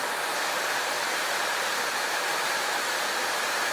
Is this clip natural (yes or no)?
no